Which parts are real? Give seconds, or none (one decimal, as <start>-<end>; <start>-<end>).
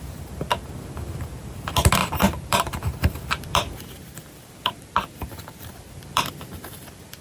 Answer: 0.0-2.0; 6.3-7.2